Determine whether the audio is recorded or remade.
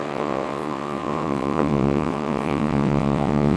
remade